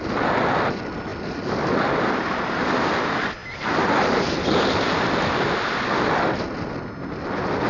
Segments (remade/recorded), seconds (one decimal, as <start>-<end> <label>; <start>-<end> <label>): 0.0-7.7 recorded